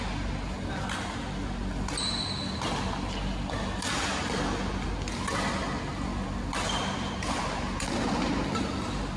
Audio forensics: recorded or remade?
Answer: recorded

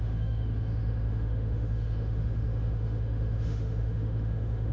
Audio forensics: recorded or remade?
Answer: remade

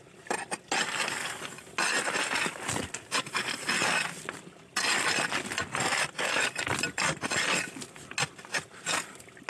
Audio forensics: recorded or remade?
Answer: recorded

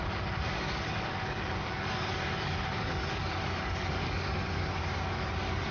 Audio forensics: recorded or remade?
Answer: remade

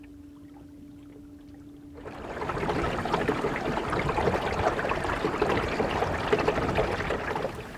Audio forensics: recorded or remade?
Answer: recorded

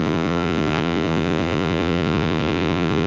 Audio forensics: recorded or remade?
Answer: remade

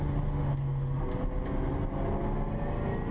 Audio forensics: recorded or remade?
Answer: recorded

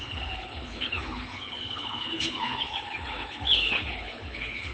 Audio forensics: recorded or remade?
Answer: remade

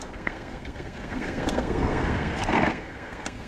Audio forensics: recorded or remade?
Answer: remade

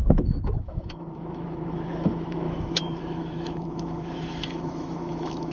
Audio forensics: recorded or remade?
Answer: remade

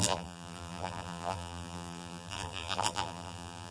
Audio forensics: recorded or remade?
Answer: remade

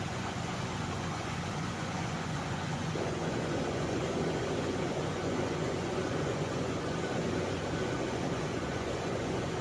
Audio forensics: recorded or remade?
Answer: remade